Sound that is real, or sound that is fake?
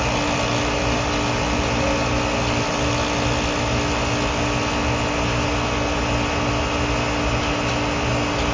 real